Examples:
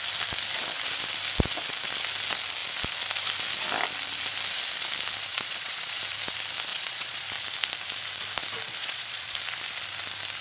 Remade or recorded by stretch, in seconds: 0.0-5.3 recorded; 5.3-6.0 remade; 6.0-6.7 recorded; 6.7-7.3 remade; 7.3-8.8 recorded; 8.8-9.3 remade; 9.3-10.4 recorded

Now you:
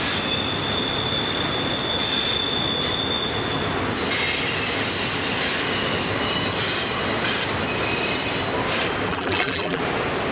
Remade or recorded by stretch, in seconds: 0.0-9.1 recorded; 9.1-9.8 remade; 9.8-10.3 recorded

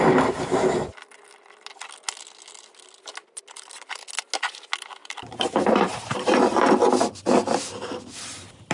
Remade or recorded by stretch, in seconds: 0.0-5.0 recorded; 5.0-6.4 remade; 6.4-8.7 recorded

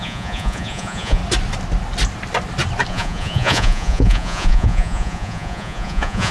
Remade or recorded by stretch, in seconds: 0.0-1.2 remade; 1.2-2.9 recorded; 2.9-6.3 remade

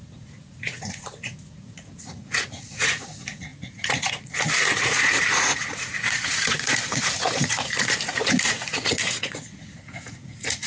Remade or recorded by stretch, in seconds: 0.0-10.7 remade